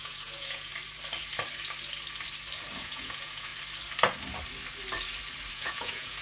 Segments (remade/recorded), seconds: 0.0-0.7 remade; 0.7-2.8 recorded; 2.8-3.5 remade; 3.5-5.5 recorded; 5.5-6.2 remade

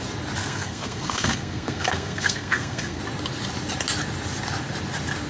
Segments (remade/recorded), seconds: 0.0-0.4 recorded; 0.4-3.0 remade; 3.0-5.3 recorded

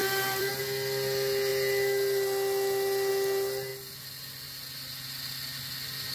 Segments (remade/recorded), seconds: 0.0-0.5 remade; 0.5-6.1 recorded

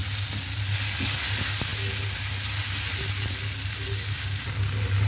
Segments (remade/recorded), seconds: 0.0-5.1 recorded

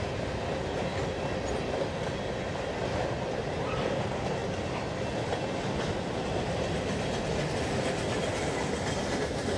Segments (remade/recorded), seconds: 0.0-9.6 recorded

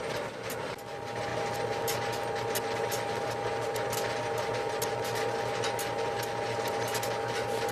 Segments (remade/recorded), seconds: 0.0-7.7 recorded